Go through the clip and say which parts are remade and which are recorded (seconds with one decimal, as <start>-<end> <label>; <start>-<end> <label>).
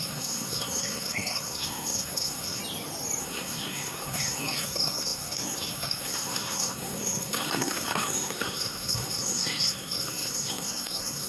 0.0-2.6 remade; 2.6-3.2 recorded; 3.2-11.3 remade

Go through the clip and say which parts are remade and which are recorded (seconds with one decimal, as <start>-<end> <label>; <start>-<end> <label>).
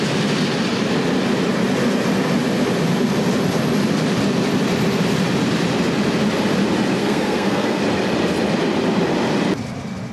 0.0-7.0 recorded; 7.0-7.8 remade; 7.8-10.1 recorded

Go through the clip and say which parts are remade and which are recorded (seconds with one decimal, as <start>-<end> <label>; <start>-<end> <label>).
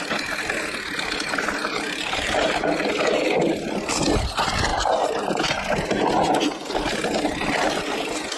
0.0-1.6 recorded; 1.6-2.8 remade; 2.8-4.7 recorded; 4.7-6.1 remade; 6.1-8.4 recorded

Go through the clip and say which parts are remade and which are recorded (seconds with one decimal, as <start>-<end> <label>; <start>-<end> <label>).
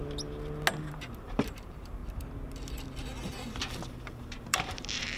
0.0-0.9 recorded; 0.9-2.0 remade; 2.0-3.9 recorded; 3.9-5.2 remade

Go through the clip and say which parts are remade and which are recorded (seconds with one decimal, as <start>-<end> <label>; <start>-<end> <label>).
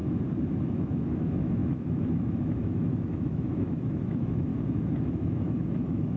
0.0-0.6 recorded; 0.6-4.5 remade; 4.5-5.1 recorded; 5.1-6.2 remade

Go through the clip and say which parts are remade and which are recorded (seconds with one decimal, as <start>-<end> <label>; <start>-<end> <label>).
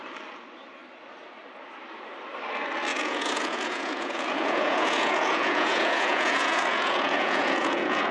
0.0-2.9 recorded; 2.9-8.1 remade